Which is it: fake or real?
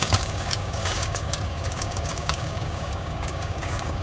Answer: fake